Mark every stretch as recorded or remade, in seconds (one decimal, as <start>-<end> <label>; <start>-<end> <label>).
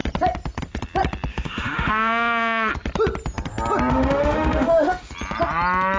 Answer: 0.0-1.3 recorded; 1.3-2.7 remade; 2.7-3.9 recorded; 3.9-5.1 remade; 5.1-6.0 recorded